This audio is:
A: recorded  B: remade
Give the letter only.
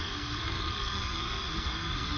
B